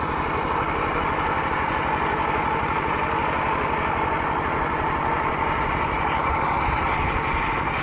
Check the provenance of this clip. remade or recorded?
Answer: recorded